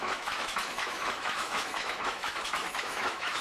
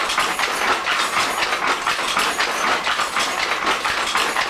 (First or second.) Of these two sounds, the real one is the second